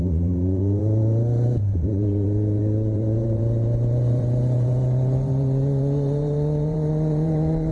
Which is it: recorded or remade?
remade